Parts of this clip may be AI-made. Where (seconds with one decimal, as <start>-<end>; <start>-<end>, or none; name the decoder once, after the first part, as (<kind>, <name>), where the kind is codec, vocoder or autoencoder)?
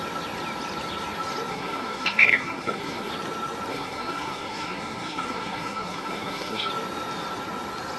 1.5-3.1 (codec, SNAC); 3.7-6.7